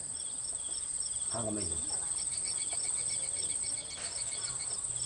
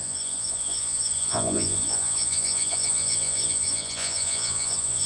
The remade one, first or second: second